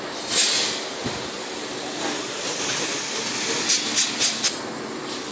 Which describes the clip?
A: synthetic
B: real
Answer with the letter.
B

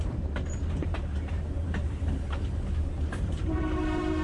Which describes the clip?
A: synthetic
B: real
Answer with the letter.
A